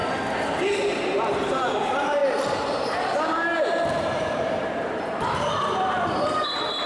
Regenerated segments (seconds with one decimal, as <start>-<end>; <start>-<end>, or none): 0.9-6.9